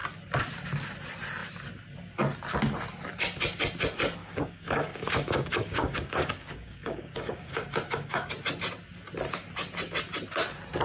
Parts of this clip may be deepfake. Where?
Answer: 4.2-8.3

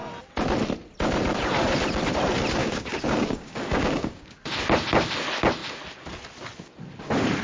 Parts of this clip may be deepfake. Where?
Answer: 2.6-4.4

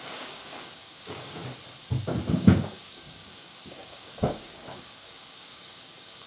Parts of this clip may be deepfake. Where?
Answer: 0.0-1.4; 2.3-6.3

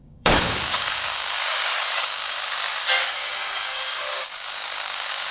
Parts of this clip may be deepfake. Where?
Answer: 0.0-5.3

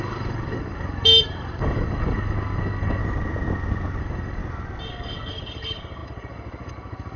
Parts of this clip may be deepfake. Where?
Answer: 0.0-3.0; 4.0-4.4; 4.9-7.2

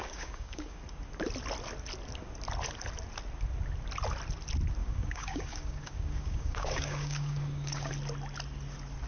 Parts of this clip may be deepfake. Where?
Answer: 0.0-0.8; 4.8-7.9